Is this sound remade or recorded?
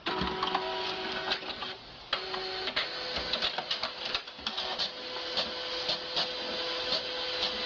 remade